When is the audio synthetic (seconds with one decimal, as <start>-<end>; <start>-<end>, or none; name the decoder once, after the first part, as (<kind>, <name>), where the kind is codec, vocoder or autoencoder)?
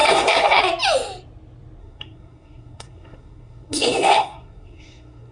0.0-0.6 (codec, SNAC); 1.8-5.3